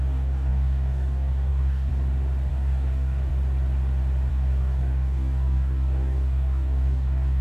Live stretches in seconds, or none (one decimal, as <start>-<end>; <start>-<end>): 1.9-2.5; 3.3-4.3